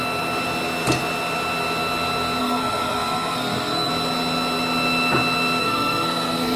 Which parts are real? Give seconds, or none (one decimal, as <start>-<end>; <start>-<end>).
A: 0.0-2.4; 3.9-5.6

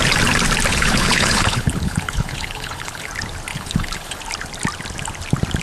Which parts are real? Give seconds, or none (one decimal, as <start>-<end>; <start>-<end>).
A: 0.0-0.7; 3.1-3.5; 4.2-5.6